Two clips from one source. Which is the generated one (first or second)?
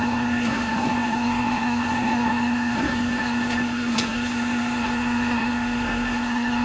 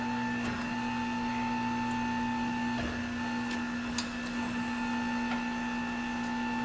first